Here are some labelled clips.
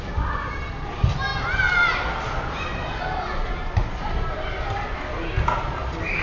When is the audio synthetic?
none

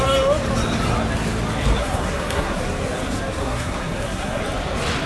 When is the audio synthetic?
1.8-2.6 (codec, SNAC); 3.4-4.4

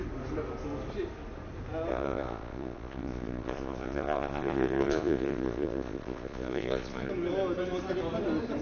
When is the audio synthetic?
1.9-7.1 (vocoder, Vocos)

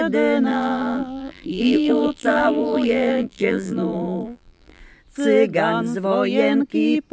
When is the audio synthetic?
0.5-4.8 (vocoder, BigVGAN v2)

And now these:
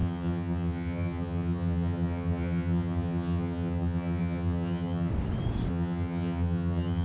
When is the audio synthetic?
0.0-5.1 (vocoder, HiFi-GAN); 5.7-7.0